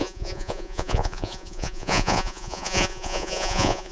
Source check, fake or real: fake